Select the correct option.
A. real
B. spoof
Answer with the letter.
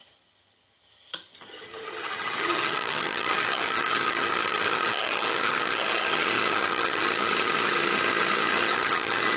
B